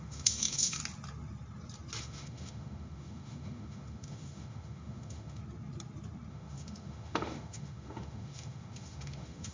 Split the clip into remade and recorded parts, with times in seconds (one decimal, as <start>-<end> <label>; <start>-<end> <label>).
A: 0.0-0.8 remade; 0.8-2.0 recorded; 2.0-5.4 remade; 5.4-6.3 recorded; 6.3-9.5 remade